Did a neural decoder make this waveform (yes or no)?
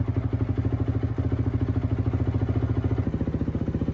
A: no